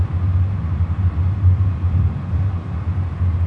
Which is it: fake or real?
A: real